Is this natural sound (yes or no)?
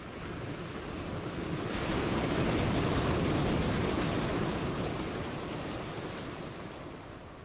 yes